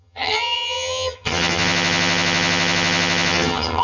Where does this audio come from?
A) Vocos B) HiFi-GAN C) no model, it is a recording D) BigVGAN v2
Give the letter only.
B